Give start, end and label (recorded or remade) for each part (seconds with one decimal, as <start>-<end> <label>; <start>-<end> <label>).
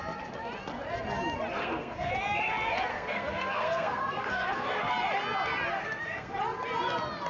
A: 0.0-1.6 recorded; 1.6-2.1 remade; 2.1-2.9 recorded; 2.9-4.9 remade; 4.9-5.8 recorded; 5.8-6.3 remade; 6.3-7.3 recorded